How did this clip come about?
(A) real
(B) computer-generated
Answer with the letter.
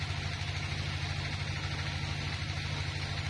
A